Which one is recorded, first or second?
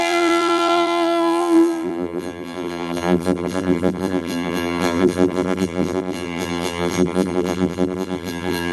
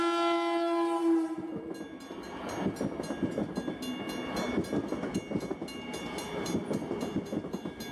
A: second